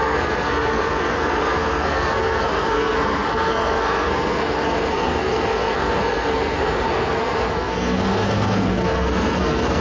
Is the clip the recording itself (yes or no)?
no